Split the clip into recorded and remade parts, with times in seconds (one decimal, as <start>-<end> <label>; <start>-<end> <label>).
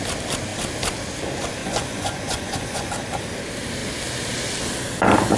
0.0-1.6 recorded; 1.6-2.9 remade; 2.9-5.4 recorded